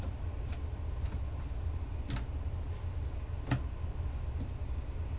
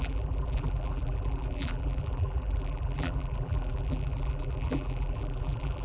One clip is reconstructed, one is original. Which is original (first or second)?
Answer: first